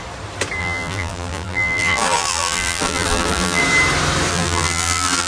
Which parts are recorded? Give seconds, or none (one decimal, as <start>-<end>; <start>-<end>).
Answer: 0.0-0.6; 3.6-4.3